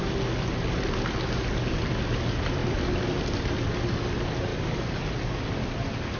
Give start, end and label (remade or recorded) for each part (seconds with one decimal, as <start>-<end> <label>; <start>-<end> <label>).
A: 0.0-6.2 recorded